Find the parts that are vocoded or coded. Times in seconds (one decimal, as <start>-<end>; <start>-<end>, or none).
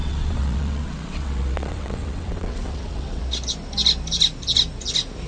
0.0-3.2